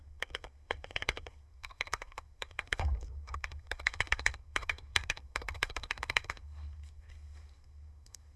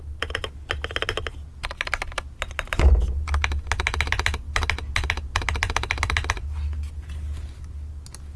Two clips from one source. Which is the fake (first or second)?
first